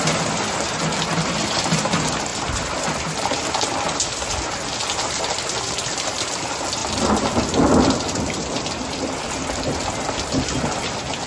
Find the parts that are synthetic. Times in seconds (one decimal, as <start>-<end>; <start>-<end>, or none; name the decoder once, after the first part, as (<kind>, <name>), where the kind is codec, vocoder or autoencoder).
none

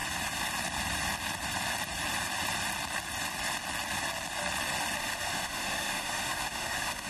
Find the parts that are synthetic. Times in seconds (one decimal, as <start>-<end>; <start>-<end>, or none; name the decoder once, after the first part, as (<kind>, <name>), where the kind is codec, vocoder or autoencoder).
5.0-7.1 (autoencoder, DAC-VAE)

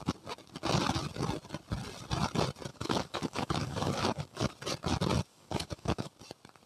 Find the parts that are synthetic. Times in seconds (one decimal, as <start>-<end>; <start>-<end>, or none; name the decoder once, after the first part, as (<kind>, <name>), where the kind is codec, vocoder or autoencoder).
2.7-4.5 (codec, DAC); 5.3-6.1